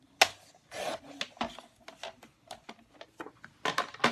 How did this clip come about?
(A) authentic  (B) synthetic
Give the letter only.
A